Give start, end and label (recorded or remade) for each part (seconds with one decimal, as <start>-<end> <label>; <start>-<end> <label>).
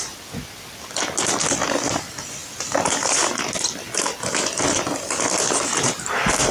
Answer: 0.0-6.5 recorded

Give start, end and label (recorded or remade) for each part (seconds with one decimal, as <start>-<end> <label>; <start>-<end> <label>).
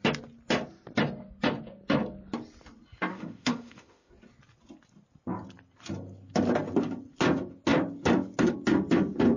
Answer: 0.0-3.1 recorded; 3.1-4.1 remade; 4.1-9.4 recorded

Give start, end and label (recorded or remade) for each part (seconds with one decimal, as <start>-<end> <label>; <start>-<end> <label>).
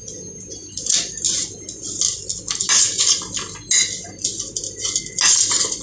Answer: 0.0-5.8 recorded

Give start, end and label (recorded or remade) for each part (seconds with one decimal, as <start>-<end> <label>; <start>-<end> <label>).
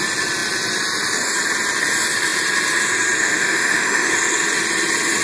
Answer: 0.0-3.2 recorded; 3.2-4.1 remade; 4.1-5.2 recorded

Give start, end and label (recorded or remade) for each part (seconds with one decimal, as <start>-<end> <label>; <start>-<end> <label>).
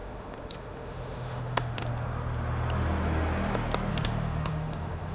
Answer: 0.0-1.9 remade; 1.9-3.9 recorded; 3.9-5.1 remade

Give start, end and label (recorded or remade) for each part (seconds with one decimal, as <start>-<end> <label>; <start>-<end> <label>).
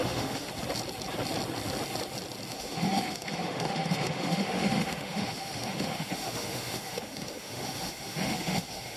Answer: 0.0-0.5 remade; 0.5-2.5 recorded; 2.5-9.0 remade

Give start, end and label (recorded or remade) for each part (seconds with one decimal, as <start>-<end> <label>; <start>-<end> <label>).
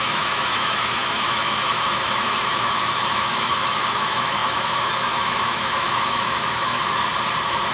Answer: 0.0-7.1 remade; 7.1-7.7 recorded